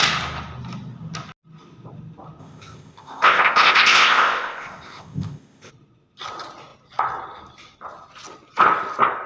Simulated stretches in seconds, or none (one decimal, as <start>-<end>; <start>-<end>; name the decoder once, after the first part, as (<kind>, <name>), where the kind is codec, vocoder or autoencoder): 2.4-5.7 (codec, ZipCodec)